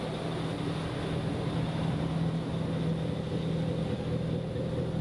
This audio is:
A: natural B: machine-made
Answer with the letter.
A